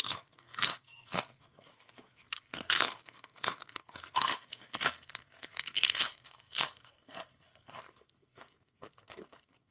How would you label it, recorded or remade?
remade